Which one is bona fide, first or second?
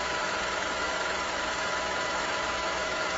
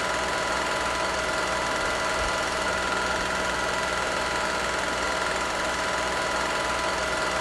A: second